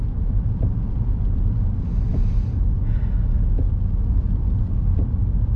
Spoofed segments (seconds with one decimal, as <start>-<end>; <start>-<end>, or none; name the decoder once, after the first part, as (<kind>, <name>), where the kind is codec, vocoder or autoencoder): none